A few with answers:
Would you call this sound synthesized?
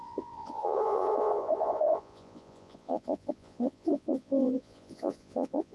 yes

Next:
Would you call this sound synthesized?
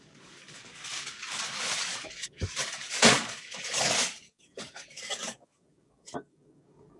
yes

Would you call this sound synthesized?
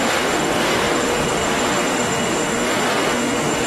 yes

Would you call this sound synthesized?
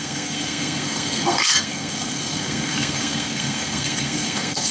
yes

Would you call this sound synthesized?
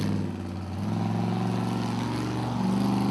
no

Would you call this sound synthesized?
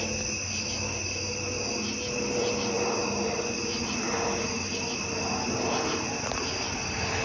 no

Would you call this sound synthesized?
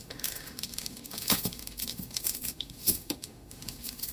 yes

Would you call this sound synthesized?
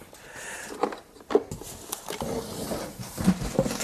no